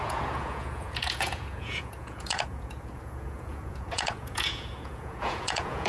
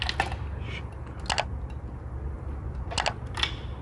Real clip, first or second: second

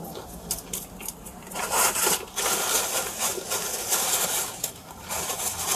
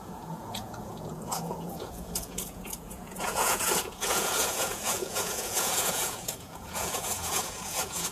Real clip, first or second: first